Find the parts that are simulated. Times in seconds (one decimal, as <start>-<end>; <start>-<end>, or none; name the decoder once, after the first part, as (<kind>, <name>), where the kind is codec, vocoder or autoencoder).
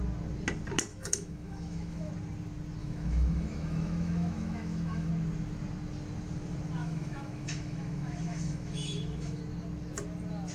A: 0.9-2.1 (autoencoder, DAC-VAE); 2.8-5.1; 6.8-9.4